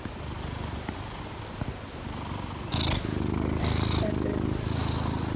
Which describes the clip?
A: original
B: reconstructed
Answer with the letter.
A